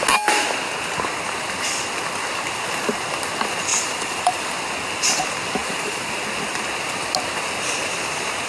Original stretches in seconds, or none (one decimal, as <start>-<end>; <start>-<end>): 0.0-3.7; 4.5-5.6; 6.2-8.5